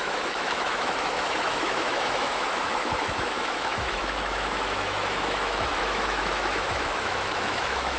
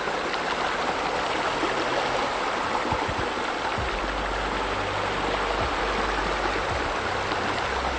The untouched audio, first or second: second